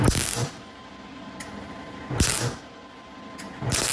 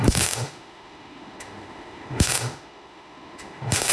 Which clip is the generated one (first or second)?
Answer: second